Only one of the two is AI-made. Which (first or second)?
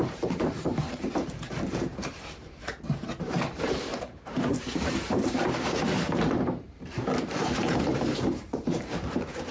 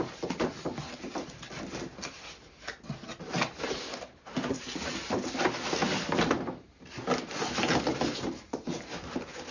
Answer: first